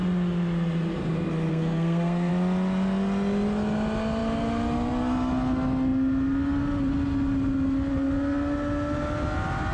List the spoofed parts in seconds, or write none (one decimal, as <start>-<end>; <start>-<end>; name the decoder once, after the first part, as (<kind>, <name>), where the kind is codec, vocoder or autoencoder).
1.5-2.3 (codec, SNAC)